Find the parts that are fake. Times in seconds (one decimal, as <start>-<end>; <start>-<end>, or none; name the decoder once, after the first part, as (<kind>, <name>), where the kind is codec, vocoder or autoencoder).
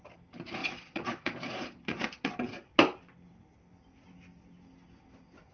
0.6-2.3 (vocoder, Vocos)